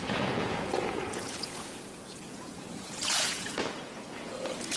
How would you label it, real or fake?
fake